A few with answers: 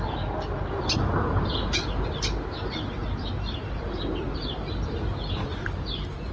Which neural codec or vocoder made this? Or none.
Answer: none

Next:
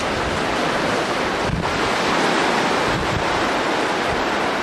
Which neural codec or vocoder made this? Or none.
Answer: none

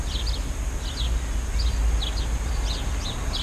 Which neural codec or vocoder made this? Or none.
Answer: none